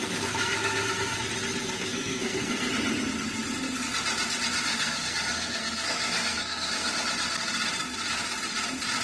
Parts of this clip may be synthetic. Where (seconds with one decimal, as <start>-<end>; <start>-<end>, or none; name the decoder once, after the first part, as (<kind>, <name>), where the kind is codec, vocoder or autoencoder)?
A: 0.0-1.2 (codec, SNAC); 1.6-2.7; 4.7-6.9